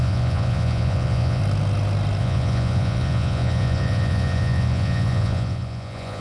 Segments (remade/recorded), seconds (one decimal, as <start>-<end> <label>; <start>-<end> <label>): 0.0-1.4 remade; 1.4-2.2 recorded; 2.2-6.2 remade